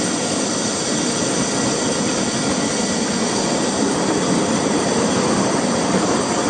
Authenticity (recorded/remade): recorded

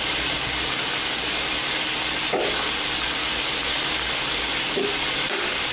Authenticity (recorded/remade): recorded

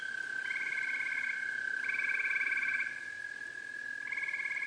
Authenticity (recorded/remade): recorded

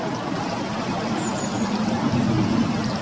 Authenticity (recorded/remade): recorded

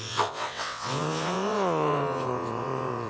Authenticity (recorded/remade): remade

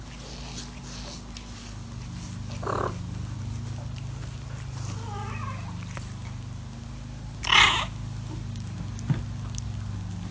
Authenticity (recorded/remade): recorded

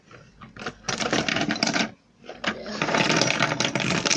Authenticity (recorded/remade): recorded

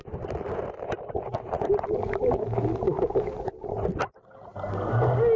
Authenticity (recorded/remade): recorded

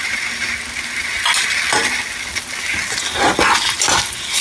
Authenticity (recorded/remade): recorded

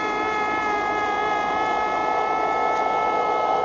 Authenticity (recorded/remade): recorded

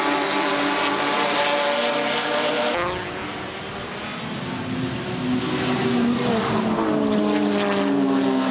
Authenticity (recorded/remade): recorded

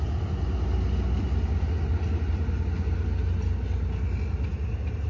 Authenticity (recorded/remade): recorded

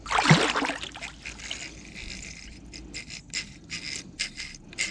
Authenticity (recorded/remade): recorded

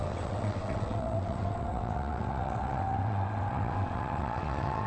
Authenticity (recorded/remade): remade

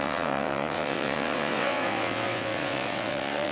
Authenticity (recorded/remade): remade